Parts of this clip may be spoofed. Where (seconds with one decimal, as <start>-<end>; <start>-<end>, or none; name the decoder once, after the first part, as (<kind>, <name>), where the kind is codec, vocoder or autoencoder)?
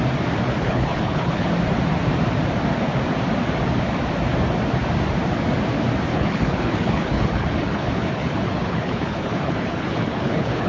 0.5-1.5 (codec, HILCodec); 6.1-10.7